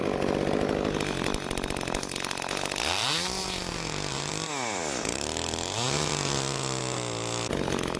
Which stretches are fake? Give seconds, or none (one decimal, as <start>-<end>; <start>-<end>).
3.0-4.3; 5.0-6.1